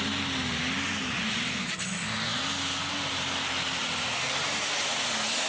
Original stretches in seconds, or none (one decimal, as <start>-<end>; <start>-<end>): 0.0-5.5